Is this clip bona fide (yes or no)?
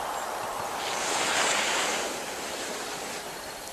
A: no